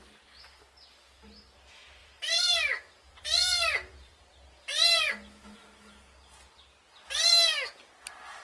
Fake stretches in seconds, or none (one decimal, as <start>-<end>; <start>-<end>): 2.0-5.1